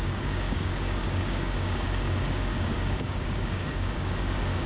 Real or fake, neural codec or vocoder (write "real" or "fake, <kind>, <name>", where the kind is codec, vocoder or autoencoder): fake, codec, DAC